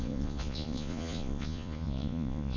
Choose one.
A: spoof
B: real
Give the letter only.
A